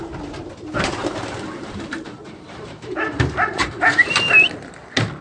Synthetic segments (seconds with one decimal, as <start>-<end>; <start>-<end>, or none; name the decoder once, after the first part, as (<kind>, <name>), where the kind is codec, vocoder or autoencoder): 1.0-4.1 (vocoder, BigVGAN v2)